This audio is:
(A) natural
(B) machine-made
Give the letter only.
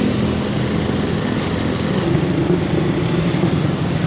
A